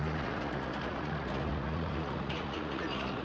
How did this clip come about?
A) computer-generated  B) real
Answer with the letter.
A